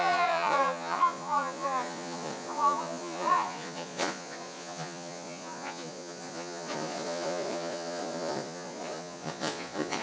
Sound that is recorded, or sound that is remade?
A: remade